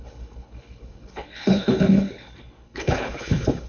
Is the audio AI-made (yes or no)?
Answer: yes